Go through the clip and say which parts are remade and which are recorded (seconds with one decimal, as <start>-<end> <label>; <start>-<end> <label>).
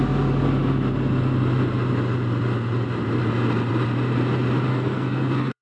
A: 0.0-4.7 recorded; 4.7-5.6 remade